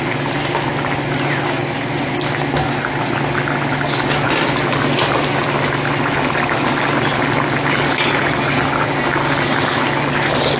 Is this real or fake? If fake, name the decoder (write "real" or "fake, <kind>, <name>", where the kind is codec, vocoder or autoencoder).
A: real